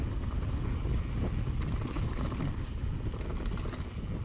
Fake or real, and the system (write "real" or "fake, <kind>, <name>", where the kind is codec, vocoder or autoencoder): real